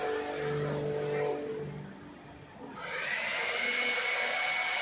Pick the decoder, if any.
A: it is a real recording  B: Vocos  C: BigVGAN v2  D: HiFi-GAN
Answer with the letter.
A